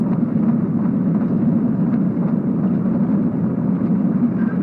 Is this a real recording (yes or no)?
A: no